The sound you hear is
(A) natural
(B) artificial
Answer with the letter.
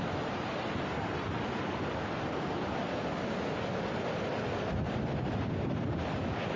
A